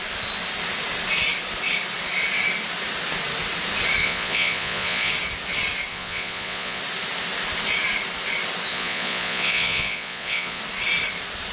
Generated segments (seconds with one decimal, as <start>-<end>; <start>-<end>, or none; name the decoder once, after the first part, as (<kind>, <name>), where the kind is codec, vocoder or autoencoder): 4.0-5.1 (vocoder, Vocos); 5.9-6.8; 8.7-10.6